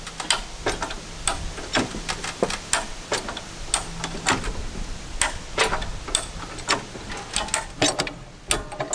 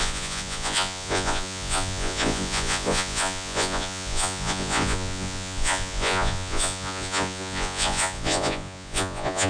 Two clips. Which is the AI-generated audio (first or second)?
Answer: second